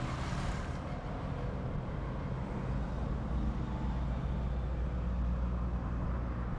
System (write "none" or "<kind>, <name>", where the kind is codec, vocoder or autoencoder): none